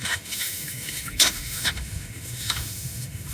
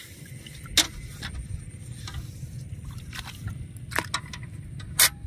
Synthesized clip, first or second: first